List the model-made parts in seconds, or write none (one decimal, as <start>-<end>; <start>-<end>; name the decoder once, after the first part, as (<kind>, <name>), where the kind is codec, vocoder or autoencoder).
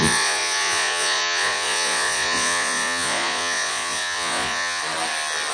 0.0-4.8 (vocoder, Vocos)